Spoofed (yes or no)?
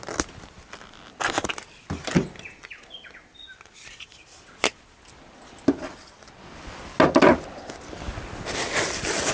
no